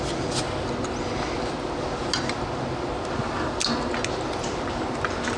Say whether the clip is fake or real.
real